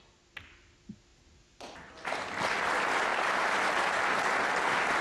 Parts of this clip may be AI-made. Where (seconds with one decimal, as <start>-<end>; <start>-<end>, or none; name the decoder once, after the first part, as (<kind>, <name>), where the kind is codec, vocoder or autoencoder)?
3.1-4.2 (vocoder, BigVGAN v2)